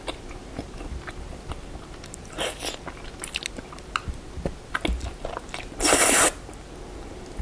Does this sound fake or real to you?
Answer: real